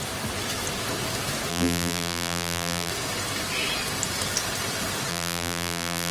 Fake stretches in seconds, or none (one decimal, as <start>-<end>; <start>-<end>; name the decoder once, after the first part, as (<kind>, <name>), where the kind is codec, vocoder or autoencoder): 1.5-2.9 (vocoder, BigVGAN v2); 5.1-6.1